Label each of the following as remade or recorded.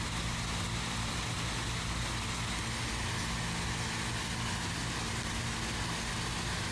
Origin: recorded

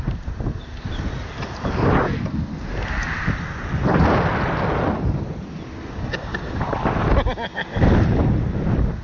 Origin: recorded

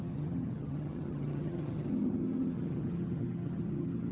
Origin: remade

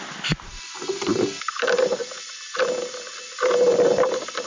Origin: recorded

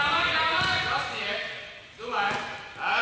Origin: recorded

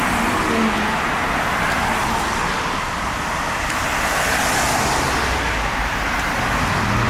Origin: recorded